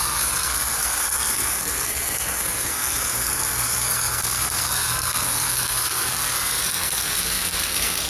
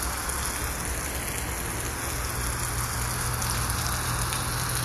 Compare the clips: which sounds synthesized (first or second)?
first